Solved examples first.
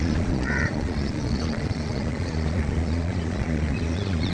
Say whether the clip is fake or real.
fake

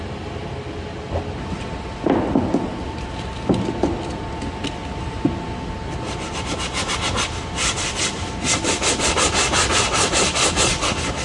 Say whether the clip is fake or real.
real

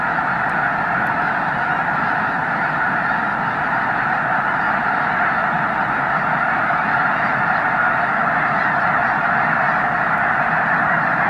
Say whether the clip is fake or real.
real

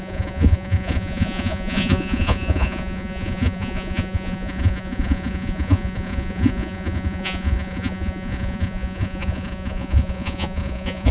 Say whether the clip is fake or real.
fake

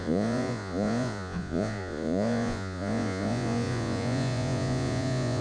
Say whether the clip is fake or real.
fake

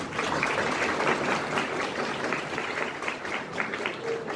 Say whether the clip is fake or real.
real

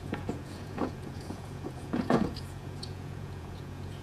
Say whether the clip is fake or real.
fake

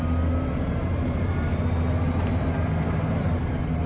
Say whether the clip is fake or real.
real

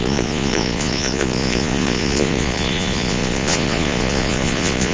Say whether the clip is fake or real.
fake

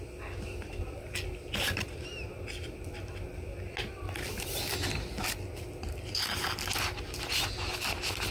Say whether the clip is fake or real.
real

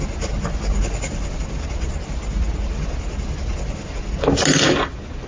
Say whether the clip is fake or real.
real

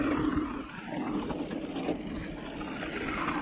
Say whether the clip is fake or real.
real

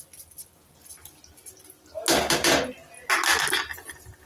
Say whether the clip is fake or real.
real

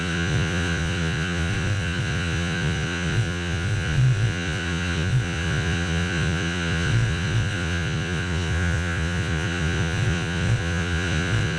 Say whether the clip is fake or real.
fake